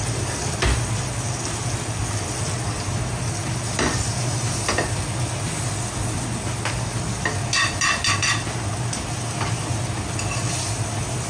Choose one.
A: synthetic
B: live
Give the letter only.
B